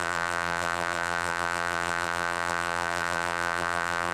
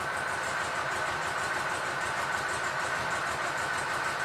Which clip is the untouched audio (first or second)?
second